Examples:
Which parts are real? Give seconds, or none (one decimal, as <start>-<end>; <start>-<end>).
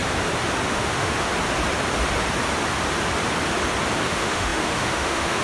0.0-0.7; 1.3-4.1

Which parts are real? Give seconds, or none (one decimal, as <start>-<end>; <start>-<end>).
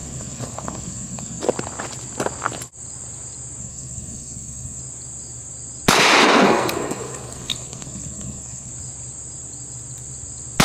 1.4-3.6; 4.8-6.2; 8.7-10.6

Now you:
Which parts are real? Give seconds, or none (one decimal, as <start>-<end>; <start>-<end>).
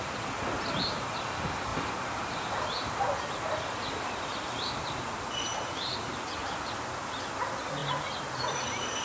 0.0-9.0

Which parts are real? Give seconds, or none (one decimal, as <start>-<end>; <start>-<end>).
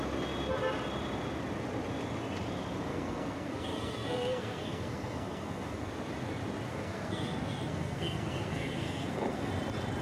0.0-2.9; 5.9-6.7; 9.5-10.0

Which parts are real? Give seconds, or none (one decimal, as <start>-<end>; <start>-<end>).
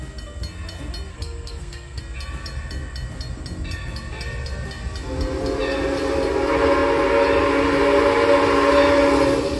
0.0-1.1; 2.0-9.6